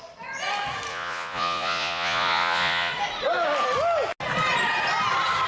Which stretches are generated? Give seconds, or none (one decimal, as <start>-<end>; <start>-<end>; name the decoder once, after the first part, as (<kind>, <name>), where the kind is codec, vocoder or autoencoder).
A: 0.9-2.9 (vocoder, Vocos)